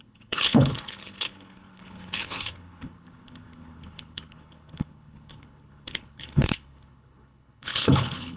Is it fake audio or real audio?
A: fake